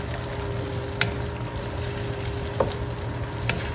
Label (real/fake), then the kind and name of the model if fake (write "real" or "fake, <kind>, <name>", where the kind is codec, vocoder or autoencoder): real